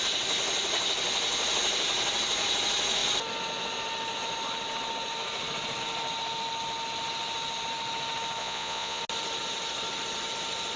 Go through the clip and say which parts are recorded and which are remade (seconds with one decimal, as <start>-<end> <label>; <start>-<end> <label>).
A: 0.0-8.4 recorded; 8.4-9.0 remade; 9.0-10.8 recorded